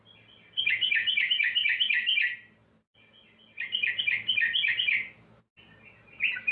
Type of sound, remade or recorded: recorded